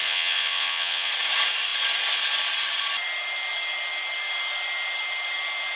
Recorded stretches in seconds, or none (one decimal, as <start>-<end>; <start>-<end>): 1.1-5.8